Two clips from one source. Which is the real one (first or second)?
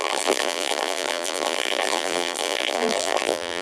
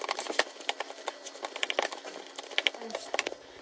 second